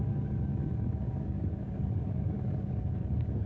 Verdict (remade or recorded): remade